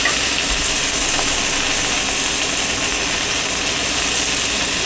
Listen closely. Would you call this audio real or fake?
real